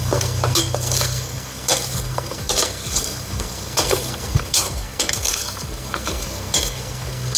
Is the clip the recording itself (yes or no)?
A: no